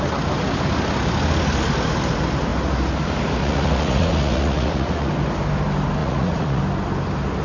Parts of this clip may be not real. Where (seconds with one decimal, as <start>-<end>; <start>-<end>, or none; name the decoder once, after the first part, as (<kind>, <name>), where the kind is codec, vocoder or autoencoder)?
3.4-5.1 (vocoder, Vocos); 6.0-6.6